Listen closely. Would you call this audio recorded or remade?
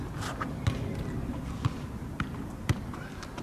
recorded